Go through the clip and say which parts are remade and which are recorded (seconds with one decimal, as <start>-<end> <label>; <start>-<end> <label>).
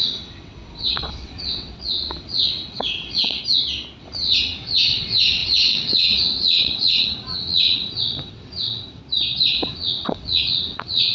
0.0-3.4 remade; 3.4-4.0 recorded; 4.0-9.0 remade; 9.0-9.5 recorded; 9.5-11.1 remade